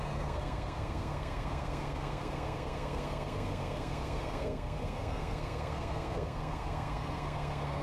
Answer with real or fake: fake